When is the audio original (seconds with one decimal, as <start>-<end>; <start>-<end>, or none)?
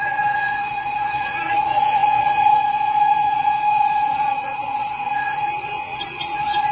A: none